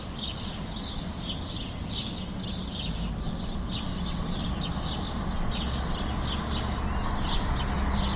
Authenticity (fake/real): real